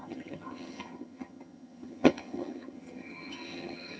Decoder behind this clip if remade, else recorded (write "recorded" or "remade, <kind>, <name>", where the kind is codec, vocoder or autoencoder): remade, vocoder, HiFi-GAN